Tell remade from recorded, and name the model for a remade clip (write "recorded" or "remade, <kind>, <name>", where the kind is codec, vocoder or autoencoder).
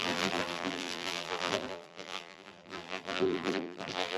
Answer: remade, vocoder, BigVGAN v2